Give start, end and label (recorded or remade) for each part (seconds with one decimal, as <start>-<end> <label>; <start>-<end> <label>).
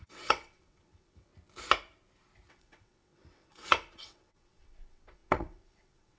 0.0-1.3 remade; 1.3-2.5 recorded; 2.5-6.2 remade